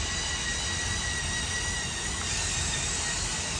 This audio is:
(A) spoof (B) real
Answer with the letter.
B